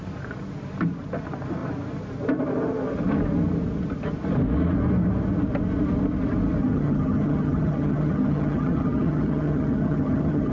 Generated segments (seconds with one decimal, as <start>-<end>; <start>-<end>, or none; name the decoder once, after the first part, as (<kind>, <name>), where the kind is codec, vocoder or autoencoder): 6.6-10.5 (vocoder, HiFi-GAN)

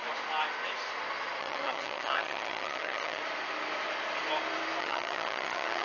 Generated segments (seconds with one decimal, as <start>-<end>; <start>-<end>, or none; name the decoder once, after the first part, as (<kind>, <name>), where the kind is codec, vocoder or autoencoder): 1.4-3.2 (vocoder, HiFi-GAN); 4.8-5.8